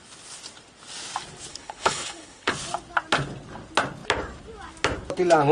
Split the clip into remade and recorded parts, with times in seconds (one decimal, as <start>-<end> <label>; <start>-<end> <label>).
0.0-1.5 recorded; 1.5-2.5 remade; 2.5-5.5 recorded